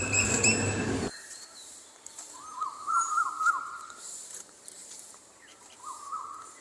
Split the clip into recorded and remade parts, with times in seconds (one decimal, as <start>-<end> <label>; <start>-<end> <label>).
0.0-6.6 remade